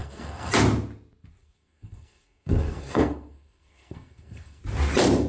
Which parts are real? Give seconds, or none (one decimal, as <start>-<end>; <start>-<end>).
0.5-1.4; 4.6-5.3